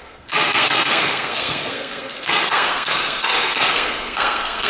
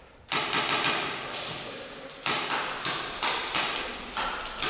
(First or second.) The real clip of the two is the second